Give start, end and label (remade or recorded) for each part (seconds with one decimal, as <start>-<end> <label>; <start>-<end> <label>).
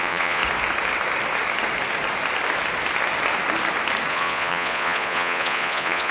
0.0-0.4 remade; 0.4-4.1 recorded; 4.1-6.1 remade